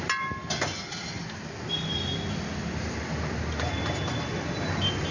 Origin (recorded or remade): recorded